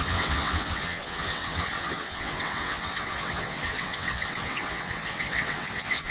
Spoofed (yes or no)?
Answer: yes